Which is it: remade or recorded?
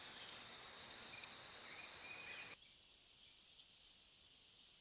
recorded